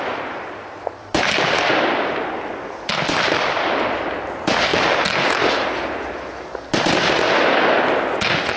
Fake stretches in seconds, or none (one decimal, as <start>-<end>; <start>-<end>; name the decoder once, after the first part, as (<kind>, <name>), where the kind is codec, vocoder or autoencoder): none